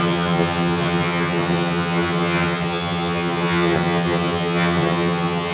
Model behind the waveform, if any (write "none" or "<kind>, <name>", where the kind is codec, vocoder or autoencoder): vocoder, HiFi-GAN